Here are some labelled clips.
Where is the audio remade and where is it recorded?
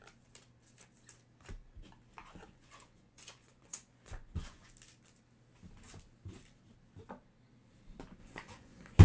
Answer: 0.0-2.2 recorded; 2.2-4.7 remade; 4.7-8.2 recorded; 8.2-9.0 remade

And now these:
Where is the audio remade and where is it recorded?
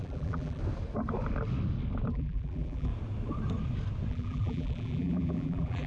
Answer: 0.0-0.6 remade; 0.6-2.1 recorded; 2.1-2.9 remade; 2.9-4.1 recorded; 4.1-5.9 remade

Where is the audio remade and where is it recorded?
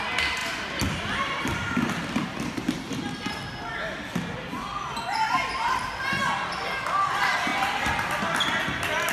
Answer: 0.0-0.4 recorded; 0.4-4.1 remade; 4.1-9.1 recorded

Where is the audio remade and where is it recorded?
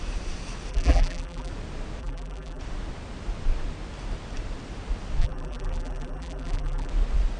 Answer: 0.0-0.7 recorded; 0.7-1.5 remade; 1.5-2.0 recorded; 2.0-2.6 remade; 2.6-5.2 recorded; 5.2-6.9 remade; 6.9-7.4 recorded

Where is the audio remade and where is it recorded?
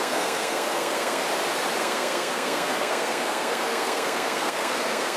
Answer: 0.0-1.2 remade; 1.2-1.8 recorded; 1.8-5.2 remade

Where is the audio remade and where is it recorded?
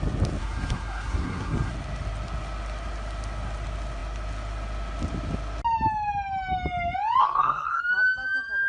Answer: 0.0-0.4 recorded; 0.4-1.7 remade; 1.7-7.2 recorded; 7.2-7.8 remade; 7.8-8.7 recorded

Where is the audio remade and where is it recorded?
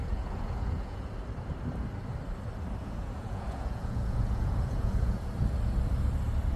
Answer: 0.0-1.1 remade; 1.1-2.8 recorded; 2.8-5.3 remade; 5.3-6.6 recorded